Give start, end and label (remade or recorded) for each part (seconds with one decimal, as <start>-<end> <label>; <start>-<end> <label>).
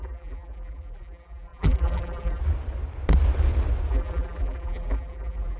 0.0-2.4 remade; 2.4-3.9 recorded; 3.9-5.6 remade